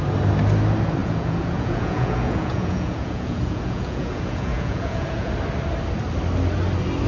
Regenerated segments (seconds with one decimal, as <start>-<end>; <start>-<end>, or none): 1.0-5.3